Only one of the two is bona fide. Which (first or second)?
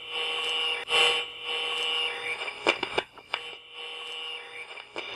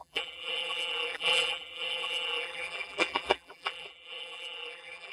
first